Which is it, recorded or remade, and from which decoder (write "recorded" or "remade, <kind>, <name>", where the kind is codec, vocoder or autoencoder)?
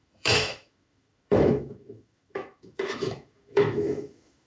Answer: remade, autoencoder, DAC-VAE